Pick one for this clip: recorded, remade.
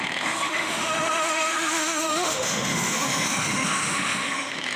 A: remade